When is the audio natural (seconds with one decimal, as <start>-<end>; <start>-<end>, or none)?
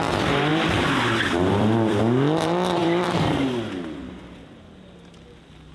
0.0-0.5; 2.0-2.8; 3.5-5.7